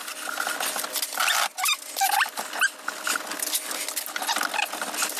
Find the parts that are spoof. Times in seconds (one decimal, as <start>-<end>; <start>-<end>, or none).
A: none